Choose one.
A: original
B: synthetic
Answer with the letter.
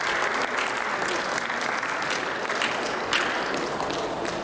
A